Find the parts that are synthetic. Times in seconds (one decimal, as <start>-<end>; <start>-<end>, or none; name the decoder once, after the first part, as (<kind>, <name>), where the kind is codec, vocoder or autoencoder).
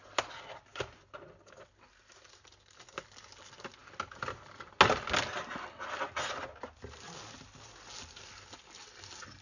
none